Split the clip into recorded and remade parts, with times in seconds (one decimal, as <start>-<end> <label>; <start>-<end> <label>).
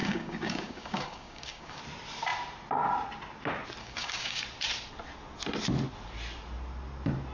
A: 0.0-1.8 remade; 1.8-3.8 recorded; 3.8-4.4 remade; 4.4-7.3 recorded